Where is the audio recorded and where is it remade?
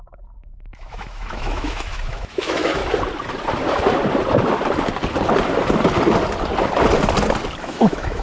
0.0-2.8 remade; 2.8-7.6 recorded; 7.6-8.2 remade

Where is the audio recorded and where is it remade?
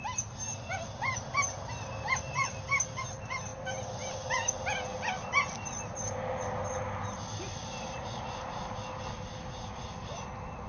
0.0-10.7 recorded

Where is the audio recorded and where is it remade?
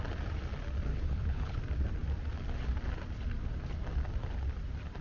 0.0-0.9 recorded; 0.9-1.6 remade; 1.6-5.0 recorded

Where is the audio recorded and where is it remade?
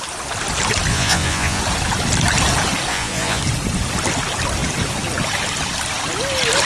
0.0-0.9 recorded; 0.9-1.6 remade; 1.6-2.9 recorded; 2.9-3.4 remade; 3.4-6.6 recorded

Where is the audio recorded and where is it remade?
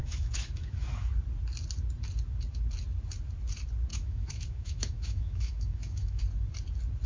0.0-1.1 remade; 1.1-3.9 recorded; 3.9-6.2 remade; 6.2-7.1 recorded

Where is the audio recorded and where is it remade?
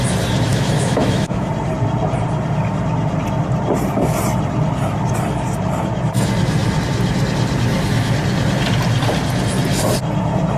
0.0-0.5 recorded; 0.5-1.5 remade; 1.5-10.6 recorded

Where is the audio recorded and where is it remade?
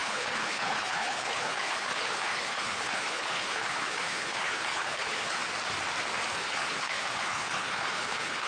0.0-5.4 remade; 5.4-6.3 recorded; 6.3-8.5 remade